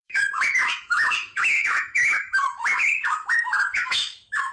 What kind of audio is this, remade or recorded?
remade